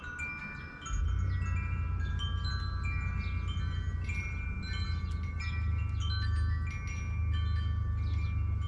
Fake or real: real